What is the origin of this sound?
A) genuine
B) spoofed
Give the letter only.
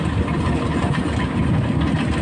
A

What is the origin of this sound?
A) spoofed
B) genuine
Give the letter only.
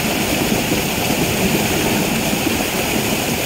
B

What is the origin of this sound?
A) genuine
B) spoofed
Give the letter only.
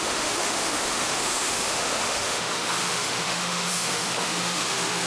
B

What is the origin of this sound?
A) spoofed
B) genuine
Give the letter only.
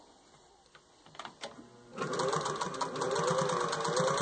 B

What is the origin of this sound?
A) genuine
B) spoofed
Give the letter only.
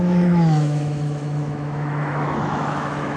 B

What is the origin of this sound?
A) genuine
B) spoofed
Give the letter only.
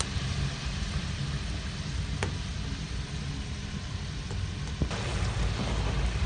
A